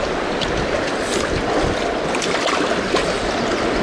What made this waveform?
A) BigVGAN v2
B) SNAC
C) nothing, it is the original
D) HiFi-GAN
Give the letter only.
C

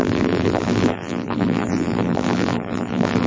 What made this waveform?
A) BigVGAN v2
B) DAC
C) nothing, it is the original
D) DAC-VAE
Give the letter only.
A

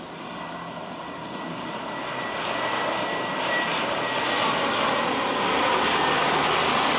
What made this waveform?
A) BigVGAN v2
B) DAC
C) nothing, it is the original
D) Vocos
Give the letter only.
A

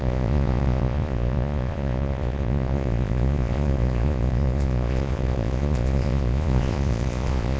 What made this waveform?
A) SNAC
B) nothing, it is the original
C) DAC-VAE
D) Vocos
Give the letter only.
D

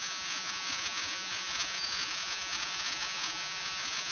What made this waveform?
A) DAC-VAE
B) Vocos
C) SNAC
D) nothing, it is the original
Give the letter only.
B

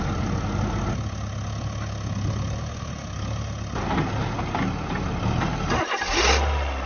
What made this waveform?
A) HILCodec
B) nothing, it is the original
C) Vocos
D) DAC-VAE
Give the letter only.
B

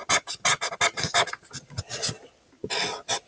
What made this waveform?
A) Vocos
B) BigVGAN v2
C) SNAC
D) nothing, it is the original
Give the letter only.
D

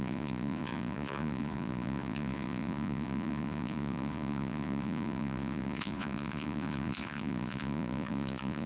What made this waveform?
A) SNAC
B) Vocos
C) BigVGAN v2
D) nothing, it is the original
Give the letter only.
B